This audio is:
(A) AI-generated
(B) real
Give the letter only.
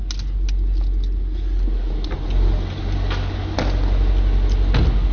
B